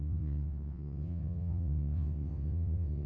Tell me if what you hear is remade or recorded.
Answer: remade